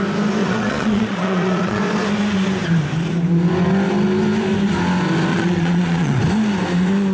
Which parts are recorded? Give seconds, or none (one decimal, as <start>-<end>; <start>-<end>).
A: 0.0-0.4; 1.8-5.3; 6.2-7.1